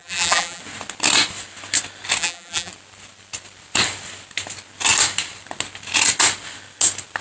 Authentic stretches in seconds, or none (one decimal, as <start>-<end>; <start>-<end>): 0.6-2.2; 2.7-7.2